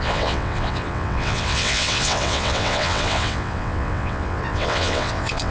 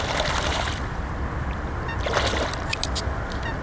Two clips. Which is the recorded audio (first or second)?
second